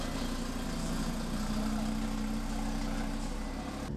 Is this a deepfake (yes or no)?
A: no